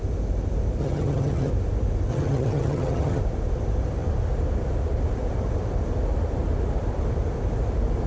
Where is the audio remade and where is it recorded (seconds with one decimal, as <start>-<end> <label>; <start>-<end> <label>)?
0.0-0.8 recorded; 0.8-1.5 remade; 1.5-2.1 recorded; 2.1-3.2 remade; 3.2-8.1 recorded